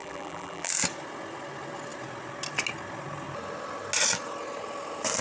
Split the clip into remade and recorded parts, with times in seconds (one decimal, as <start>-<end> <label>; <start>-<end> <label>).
0.0-0.7 remade; 0.7-5.2 recorded

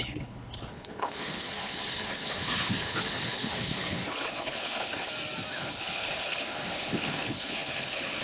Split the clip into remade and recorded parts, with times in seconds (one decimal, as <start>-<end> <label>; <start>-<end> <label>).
0.0-5.1 remade; 5.1-5.6 recorded; 5.6-8.2 remade

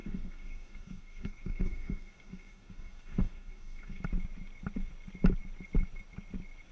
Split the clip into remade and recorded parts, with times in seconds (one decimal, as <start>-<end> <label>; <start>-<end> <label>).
0.0-4.0 remade; 4.0-6.7 recorded